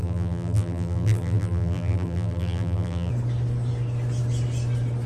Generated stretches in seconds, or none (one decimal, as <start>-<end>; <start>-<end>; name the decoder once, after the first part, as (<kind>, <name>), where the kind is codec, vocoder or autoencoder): 0.0-3.1 (vocoder, BigVGAN v2)